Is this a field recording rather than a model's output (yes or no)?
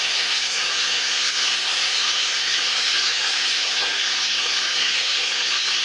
no